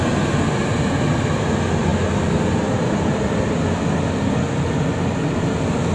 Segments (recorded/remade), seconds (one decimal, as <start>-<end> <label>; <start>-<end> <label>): 0.0-5.9 recorded

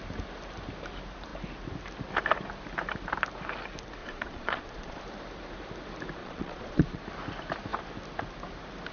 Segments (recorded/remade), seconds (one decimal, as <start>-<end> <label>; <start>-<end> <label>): 0.0-4.0 recorded; 4.0-5.0 remade; 5.0-6.2 recorded; 6.2-7.0 remade; 7.0-8.9 recorded

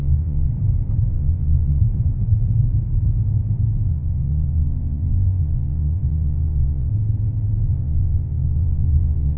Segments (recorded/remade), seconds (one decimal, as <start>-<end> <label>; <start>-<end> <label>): 0.0-0.5 remade; 0.5-1.1 recorded; 1.1-1.8 remade; 1.8-3.9 recorded; 3.9-6.9 remade; 6.9-7.7 recorded; 7.7-9.4 remade